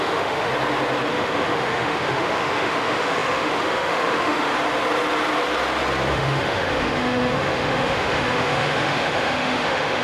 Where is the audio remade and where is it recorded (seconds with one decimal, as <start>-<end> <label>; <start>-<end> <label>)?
0.0-0.5 remade; 0.5-1.1 recorded; 1.1-4.5 remade; 4.5-6.1 recorded; 6.1-10.0 remade